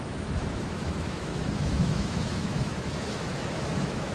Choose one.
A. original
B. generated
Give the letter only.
B